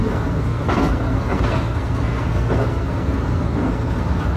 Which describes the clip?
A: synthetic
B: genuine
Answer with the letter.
A